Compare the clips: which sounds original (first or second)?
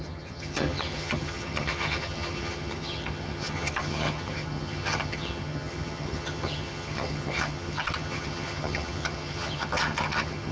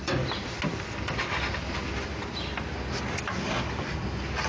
second